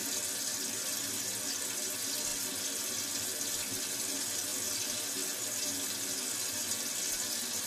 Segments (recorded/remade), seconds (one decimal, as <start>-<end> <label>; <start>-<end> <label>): 0.0-7.7 recorded